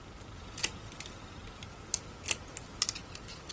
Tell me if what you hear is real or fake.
real